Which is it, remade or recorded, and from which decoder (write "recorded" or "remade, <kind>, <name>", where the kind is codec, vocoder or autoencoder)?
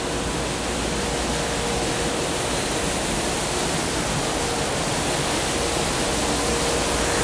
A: recorded